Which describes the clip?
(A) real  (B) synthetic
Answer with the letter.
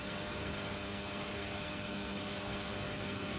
B